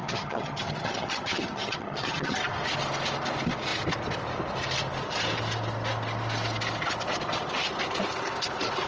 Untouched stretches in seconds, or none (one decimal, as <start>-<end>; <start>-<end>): 2.4-8.9